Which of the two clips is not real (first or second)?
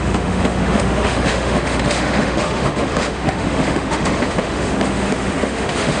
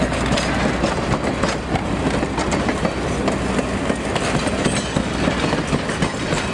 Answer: first